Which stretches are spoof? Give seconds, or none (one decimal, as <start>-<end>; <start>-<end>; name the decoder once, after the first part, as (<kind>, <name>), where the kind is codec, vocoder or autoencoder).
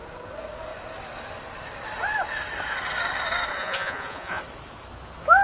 3.5-4.4 (vocoder, Vocos)